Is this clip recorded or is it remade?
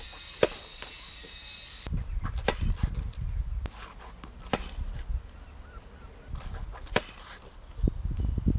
recorded